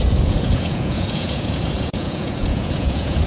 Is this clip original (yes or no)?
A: no